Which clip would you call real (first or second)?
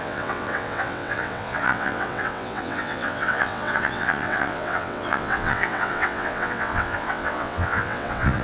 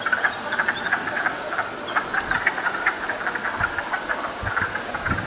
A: second